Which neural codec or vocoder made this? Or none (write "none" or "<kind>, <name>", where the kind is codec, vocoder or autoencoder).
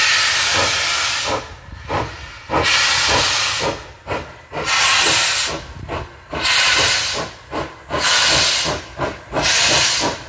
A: none